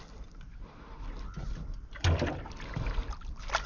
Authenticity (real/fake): real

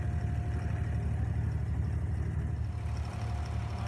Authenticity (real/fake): real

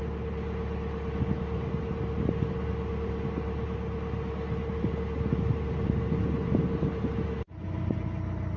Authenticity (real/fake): real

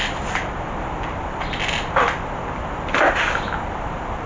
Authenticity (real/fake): real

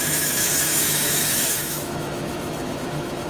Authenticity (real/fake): fake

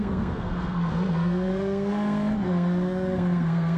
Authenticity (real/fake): fake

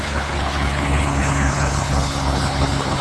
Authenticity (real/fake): fake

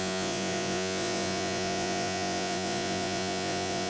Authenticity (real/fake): fake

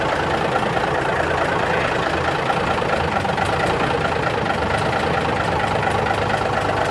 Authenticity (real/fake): real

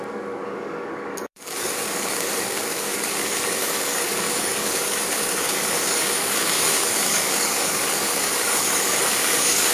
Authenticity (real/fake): fake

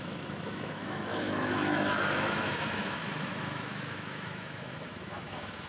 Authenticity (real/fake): fake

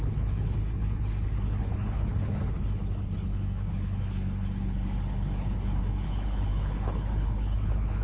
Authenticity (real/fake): fake